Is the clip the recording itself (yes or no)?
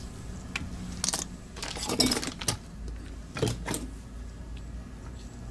yes